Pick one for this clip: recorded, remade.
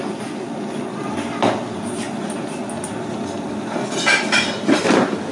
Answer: recorded